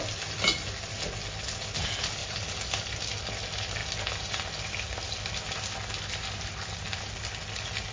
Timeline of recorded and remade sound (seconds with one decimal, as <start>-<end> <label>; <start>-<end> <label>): 0.0-7.9 recorded